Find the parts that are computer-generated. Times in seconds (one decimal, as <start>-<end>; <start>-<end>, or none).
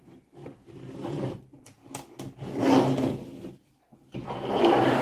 0.0-1.8; 3.8-5.0